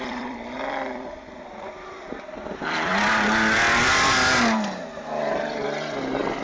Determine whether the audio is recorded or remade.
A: remade